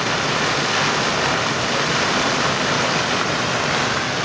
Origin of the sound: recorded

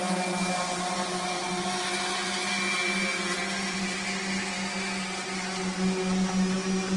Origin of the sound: recorded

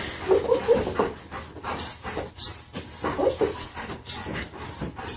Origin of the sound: recorded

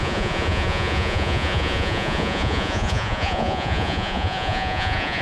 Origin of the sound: remade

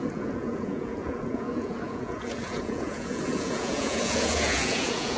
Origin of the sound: remade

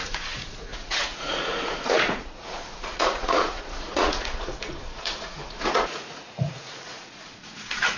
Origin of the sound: remade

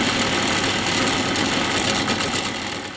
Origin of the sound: recorded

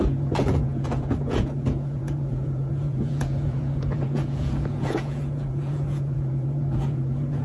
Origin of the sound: remade